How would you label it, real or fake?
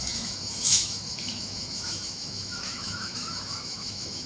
fake